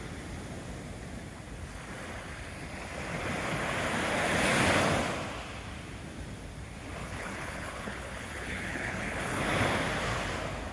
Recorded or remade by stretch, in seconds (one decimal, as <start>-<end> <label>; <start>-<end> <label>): 0.0-7.0 recorded; 7.0-9.4 remade; 9.4-10.7 recorded